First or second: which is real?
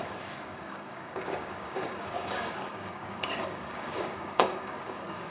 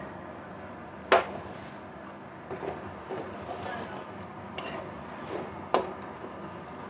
second